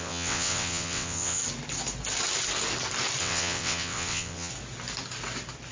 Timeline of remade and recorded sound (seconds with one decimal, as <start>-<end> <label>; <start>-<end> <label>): 0.0-1.4 remade; 1.4-3.2 recorded; 3.2-4.5 remade; 4.5-5.7 recorded